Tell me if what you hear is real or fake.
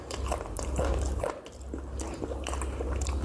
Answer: real